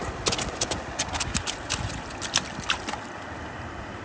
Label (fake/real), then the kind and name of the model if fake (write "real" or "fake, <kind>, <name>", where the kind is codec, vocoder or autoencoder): real